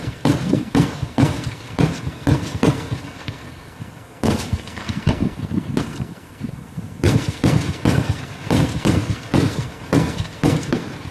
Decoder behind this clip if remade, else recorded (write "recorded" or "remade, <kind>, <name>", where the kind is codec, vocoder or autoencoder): remade, codec, SNAC